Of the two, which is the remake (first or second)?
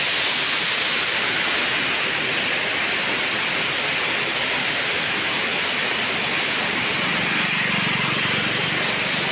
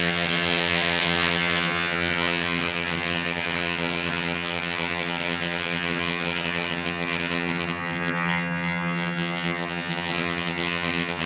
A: second